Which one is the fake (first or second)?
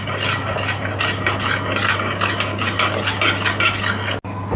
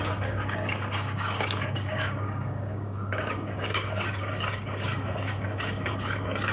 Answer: second